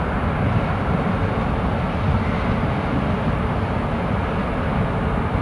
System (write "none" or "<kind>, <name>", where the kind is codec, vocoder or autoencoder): none